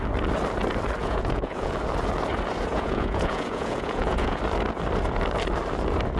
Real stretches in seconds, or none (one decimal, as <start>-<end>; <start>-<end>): 0.0-1.0; 1.7-2.7; 4.4-6.2